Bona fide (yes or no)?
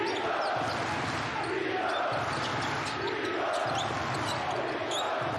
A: yes